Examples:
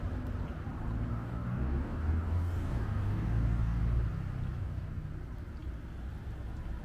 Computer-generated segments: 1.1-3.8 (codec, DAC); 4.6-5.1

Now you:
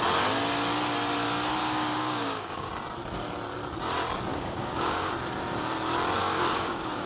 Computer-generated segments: 1.6-2.7 (codec, DAC); 4.3-5.1; 6.2-7.1

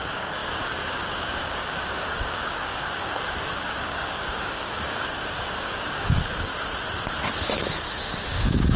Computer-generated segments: 0.0-6.5 (codec, DAC); 8.2-8.8

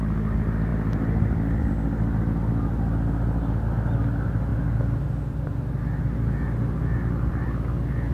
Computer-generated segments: none

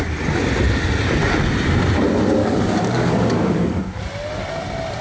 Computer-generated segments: 2.4-4.0 (codec, DAC)

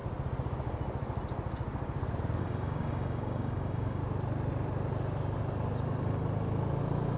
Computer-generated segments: 2.4-4.0 (codec, DAC)

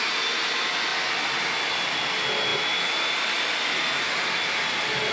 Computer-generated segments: none